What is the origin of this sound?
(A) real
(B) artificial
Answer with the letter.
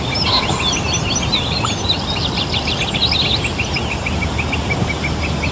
A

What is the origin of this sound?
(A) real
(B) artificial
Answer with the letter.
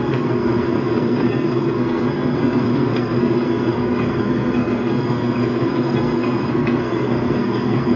B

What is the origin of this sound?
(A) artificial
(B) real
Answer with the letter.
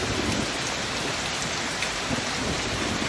B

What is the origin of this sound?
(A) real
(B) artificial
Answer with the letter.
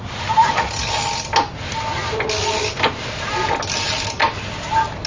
A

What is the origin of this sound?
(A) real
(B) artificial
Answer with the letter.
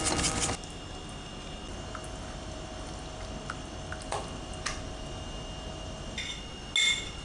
A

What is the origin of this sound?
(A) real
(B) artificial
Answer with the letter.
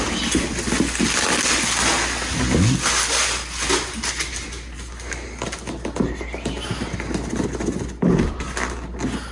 A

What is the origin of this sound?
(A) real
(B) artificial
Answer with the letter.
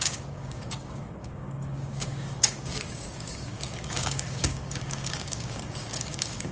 B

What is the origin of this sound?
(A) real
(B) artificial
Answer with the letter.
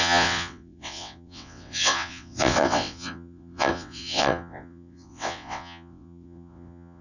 B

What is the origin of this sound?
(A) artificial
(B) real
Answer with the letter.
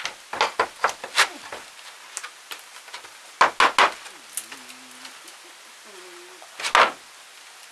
B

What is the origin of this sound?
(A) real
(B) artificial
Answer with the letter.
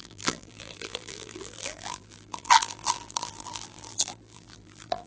B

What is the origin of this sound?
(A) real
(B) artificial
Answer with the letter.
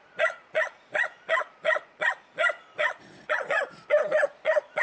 B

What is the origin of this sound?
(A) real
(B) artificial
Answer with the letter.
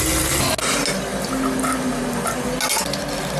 A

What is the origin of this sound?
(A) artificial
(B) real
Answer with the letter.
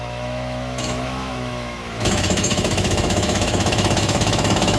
A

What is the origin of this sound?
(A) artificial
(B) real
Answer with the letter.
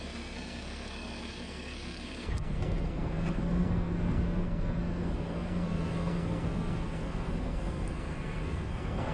A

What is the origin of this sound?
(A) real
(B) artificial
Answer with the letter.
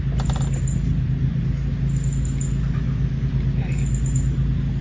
A